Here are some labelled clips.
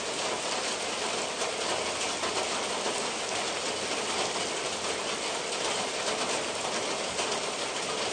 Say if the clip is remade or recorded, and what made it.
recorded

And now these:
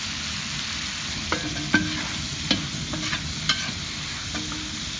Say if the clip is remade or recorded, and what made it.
recorded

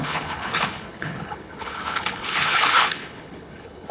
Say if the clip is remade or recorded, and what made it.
remade, codec, HILCodec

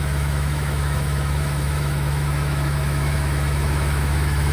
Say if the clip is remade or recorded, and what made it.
remade, autoencoder, DAC-VAE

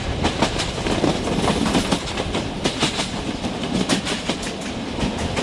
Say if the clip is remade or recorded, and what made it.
recorded